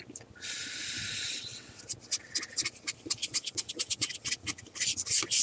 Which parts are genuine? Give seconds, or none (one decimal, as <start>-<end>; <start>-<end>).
0.0-1.0; 1.8-3.2; 4.3-5.4